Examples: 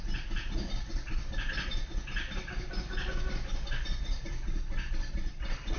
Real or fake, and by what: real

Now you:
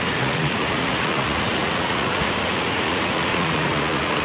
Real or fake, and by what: fake, vocoder, Vocos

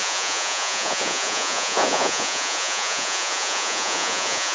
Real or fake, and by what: fake, vocoder, Vocos